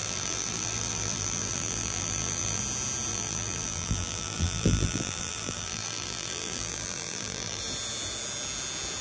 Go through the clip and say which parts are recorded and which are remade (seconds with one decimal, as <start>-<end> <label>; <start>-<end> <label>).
0.0-2.6 remade; 2.6-3.1 recorded; 3.1-7.6 remade; 7.6-9.0 recorded